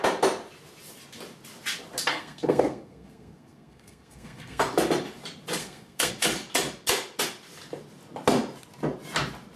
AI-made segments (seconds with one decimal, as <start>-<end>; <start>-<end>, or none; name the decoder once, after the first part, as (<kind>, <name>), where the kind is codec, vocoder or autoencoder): 2.1-4.6 (codec, SNAC); 5.6-6.1